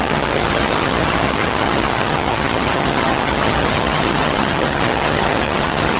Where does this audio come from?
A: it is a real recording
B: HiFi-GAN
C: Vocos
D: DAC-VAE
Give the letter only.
B